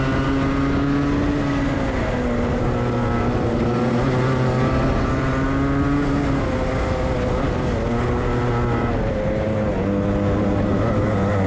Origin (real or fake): real